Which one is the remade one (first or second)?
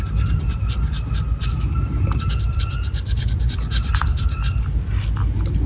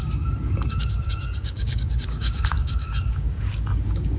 second